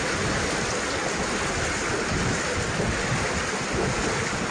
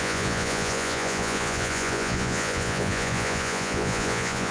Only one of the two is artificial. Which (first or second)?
second